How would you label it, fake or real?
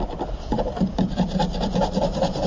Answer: fake